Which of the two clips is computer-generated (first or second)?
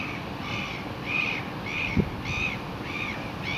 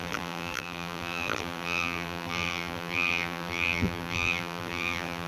second